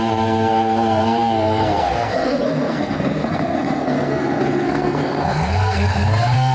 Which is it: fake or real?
fake